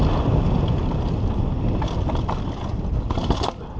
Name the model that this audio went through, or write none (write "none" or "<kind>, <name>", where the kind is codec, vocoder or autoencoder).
none